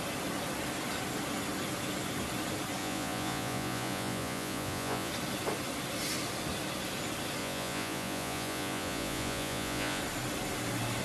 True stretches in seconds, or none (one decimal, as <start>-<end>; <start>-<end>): 0.0-2.8; 5.1-7.4; 10.0-11.0